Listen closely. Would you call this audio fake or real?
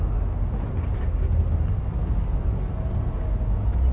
real